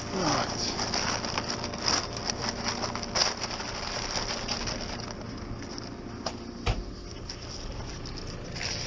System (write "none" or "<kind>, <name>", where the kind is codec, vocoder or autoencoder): none